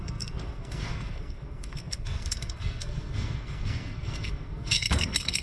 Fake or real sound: fake